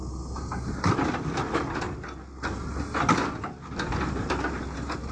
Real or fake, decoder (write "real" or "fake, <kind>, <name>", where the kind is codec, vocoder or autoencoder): real